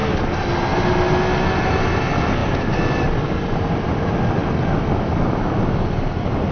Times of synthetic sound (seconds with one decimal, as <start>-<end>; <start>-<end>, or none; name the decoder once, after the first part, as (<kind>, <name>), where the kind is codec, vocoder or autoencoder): none